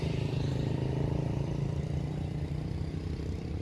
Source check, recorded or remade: remade